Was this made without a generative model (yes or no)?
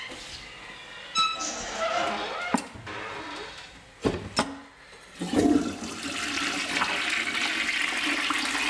yes